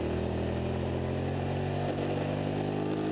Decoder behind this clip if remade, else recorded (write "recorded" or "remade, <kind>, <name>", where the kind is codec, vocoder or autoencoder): recorded